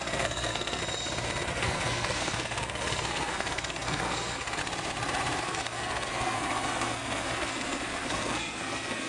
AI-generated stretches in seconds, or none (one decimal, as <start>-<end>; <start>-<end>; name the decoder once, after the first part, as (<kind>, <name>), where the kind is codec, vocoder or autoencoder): 0.0-0.8 (codec, SNAC); 1.5-4.6; 5.4-9.1